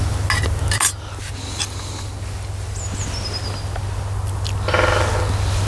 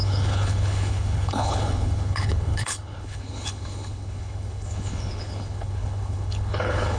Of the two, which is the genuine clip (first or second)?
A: first